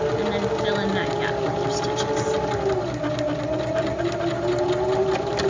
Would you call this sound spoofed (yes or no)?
no